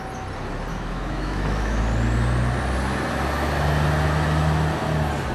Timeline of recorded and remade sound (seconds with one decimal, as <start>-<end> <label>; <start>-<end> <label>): 0.0-0.7 recorded; 0.7-1.8 remade; 1.8-5.3 recorded